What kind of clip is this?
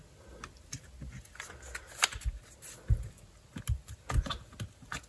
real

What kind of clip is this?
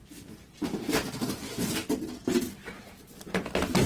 real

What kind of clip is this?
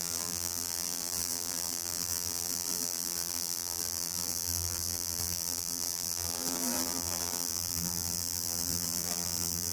fake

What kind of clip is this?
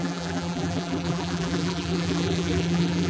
fake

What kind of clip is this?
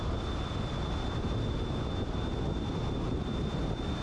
real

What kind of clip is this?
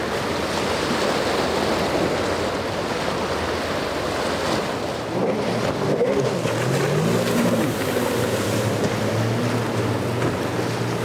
real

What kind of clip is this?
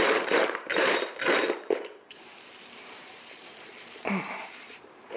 fake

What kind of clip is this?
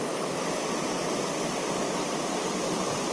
real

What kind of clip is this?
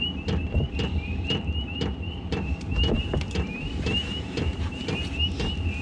fake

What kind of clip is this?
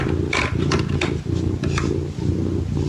real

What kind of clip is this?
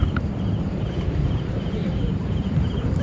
fake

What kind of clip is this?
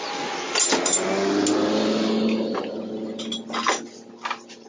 real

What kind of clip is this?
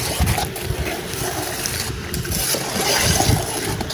real